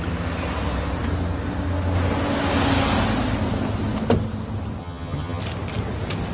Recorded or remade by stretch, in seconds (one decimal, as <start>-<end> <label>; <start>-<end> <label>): 0.0-4.8 recorded; 4.8-5.4 remade; 5.4-6.3 recorded